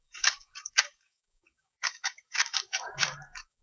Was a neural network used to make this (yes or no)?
yes